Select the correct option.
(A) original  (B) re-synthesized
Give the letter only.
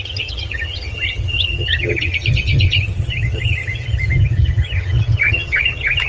B